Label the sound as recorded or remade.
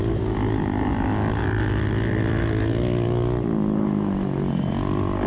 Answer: recorded